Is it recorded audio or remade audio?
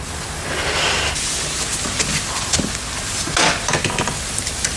recorded